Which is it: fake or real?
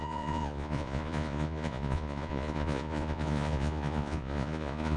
fake